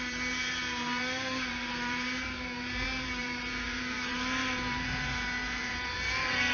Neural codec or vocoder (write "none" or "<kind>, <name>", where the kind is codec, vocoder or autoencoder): vocoder, BigVGAN v2